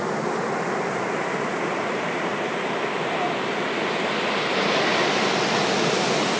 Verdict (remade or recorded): recorded